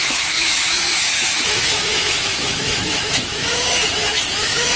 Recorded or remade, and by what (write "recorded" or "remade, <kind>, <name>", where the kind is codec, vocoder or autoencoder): remade, autoencoder, DAC-VAE